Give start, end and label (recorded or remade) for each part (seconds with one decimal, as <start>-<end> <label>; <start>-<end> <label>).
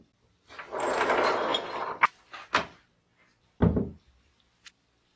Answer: 0.0-5.2 recorded